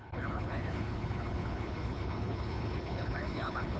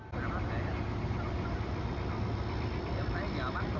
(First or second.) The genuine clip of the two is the second